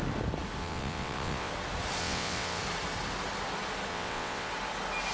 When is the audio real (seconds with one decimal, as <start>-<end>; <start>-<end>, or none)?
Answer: 0.0-0.6; 1.5-2.0; 2.6-3.9; 4.5-5.1